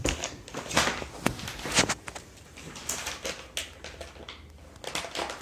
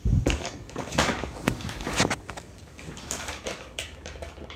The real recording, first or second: first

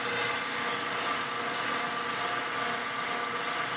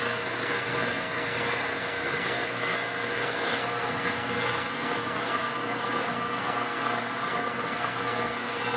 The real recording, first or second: first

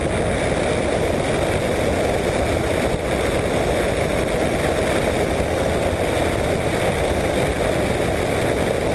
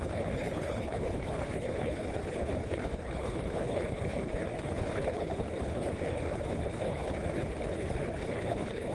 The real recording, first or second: first